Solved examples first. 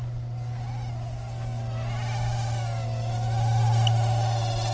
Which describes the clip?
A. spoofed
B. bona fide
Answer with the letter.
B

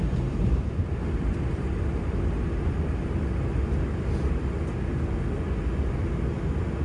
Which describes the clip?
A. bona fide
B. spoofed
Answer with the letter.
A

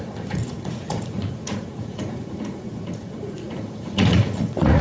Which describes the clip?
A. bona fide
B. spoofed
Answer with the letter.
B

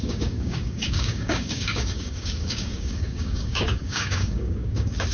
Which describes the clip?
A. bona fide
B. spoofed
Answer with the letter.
B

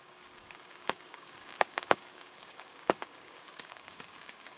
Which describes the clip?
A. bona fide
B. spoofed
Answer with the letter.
B